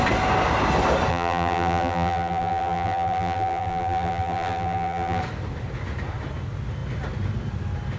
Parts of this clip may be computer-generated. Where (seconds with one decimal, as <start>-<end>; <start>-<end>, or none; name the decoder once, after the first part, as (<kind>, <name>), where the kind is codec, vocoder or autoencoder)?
1.1-5.2 (vocoder, BigVGAN v2)